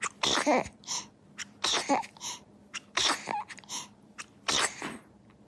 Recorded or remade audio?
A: recorded